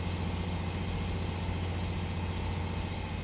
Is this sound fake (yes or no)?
no